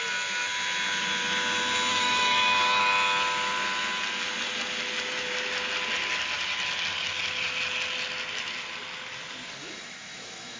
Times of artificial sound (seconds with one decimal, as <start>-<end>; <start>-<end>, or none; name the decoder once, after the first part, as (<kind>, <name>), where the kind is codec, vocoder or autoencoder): 1.9-2.8 (autoencoder, DAC-VAE); 9.6-10.6